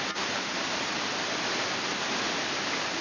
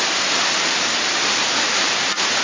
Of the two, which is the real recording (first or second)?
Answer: first